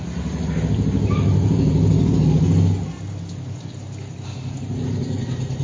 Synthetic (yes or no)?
no